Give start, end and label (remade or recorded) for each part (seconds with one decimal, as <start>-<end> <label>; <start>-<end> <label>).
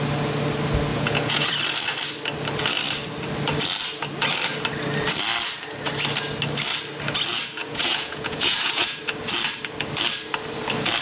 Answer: 0.0-0.9 recorded; 0.9-1.5 remade; 1.5-7.6 recorded; 7.6-9.0 remade; 9.0-11.0 recorded